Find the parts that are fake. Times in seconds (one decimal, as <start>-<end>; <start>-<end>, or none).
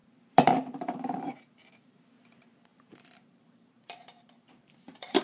0.0-2.0; 2.7-5.2